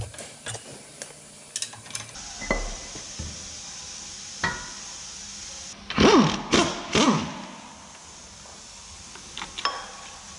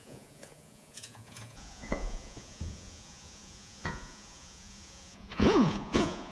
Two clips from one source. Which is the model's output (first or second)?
second